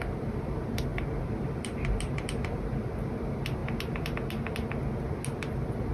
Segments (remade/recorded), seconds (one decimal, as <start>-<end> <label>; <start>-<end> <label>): 0.0-0.9 remade; 0.9-1.6 recorded; 1.6-3.6 remade; 3.6-5.4 recorded; 5.4-5.9 remade